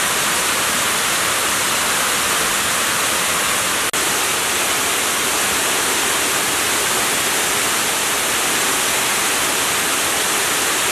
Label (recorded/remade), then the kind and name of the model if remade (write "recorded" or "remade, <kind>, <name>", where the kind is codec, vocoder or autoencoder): recorded